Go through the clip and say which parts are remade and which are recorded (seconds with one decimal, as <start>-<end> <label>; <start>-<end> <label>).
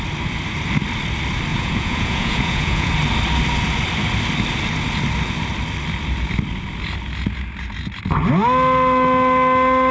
0.0-1.5 recorded; 1.5-2.9 remade; 2.9-9.9 recorded